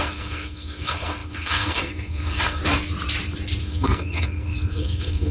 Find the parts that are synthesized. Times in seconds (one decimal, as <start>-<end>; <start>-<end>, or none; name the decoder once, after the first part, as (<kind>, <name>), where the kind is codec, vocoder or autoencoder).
0.0-2.6 (codec, SNAC); 3.6-5.3